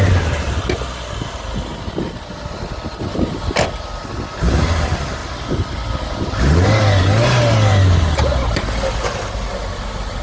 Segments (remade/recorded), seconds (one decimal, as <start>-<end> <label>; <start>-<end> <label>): 0.0-10.2 recorded